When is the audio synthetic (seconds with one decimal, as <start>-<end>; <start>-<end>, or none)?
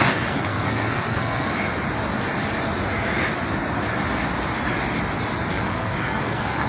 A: 0.0-1.5; 5.5-6.7